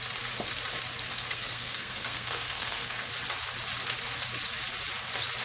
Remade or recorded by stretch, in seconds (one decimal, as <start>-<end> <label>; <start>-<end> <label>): 0.0-1.1 recorded; 1.1-3.1 remade; 3.1-5.4 recorded